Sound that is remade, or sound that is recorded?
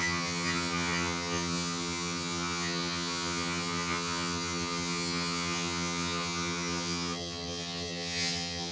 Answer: remade